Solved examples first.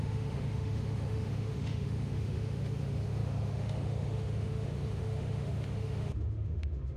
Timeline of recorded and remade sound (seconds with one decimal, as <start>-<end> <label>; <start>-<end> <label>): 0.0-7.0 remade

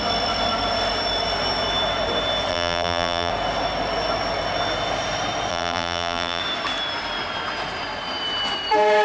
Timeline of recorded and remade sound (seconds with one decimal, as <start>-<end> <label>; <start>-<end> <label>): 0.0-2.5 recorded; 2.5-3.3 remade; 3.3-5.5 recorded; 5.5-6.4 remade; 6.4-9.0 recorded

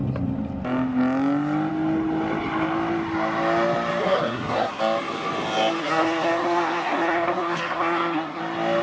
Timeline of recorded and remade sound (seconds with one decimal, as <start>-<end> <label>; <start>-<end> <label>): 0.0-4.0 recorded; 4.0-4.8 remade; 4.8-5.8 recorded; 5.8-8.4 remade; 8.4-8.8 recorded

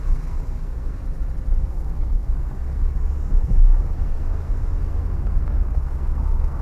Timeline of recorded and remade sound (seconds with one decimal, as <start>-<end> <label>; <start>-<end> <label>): 0.0-1.0 remade; 1.0-1.6 recorded; 1.6-6.6 remade